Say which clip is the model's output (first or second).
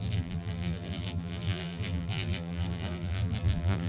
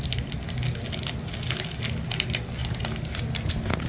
first